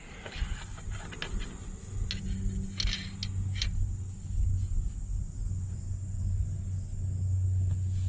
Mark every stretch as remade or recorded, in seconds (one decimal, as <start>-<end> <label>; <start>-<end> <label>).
0.0-5.4 recorded; 5.4-6.6 remade; 6.6-8.1 recorded